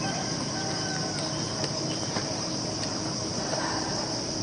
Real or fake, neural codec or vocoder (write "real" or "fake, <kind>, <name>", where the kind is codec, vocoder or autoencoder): fake, vocoder, BigVGAN v2